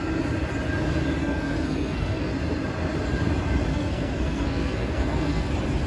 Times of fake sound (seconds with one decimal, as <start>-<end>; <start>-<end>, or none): 1.2-2.3; 3.7-5.5